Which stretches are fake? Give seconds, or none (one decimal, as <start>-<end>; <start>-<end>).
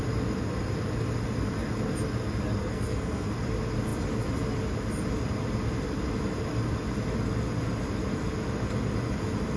2.6-3.3